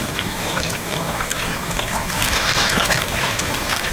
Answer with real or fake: fake